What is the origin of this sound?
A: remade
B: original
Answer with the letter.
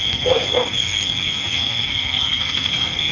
A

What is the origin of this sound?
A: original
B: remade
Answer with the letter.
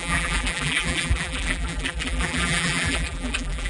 B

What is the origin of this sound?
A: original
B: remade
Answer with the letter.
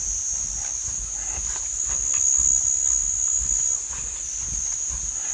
A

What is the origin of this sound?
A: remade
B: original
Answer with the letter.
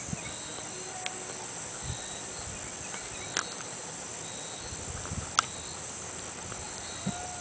B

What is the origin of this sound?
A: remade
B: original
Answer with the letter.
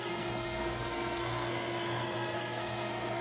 A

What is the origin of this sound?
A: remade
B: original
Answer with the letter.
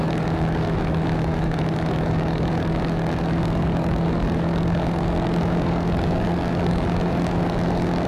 A